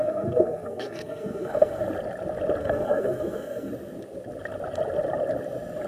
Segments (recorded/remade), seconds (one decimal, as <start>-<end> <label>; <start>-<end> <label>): 0.0-1.8 remade; 1.8-2.6 recorded; 2.6-3.7 remade; 3.7-5.9 recorded